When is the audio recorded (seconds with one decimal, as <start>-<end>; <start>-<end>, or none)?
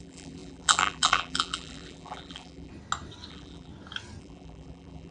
2.7-3.3; 3.7-4.2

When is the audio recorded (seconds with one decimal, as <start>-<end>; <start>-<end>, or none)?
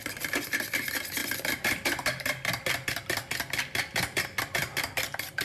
1.2-4.4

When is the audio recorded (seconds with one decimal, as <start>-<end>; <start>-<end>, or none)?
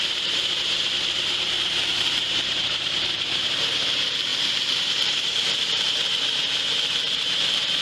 none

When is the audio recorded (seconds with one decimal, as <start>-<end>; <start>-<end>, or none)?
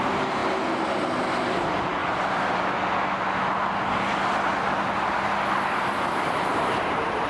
0.4-1.4; 2.0-6.4